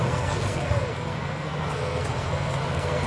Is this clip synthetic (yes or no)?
yes